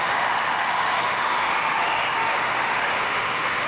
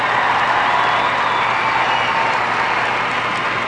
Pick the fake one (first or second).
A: first